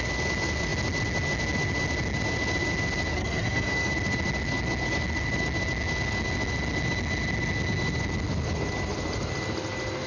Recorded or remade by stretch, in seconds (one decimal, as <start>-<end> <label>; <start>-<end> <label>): 0.0-3.1 recorded; 3.1-3.9 remade; 3.9-10.1 recorded